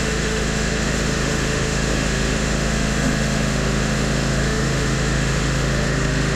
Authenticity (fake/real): fake